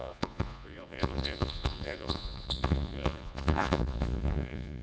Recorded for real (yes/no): no